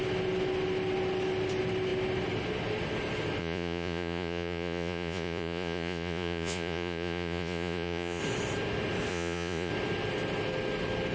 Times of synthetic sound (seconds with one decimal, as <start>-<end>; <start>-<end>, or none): 3.4-8.2; 9.1-9.7